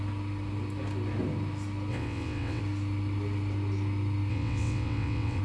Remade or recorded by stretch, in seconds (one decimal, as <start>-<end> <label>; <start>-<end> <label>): 0.0-1.9 recorded; 1.9-2.6 remade; 2.6-4.3 recorded; 4.3-5.4 remade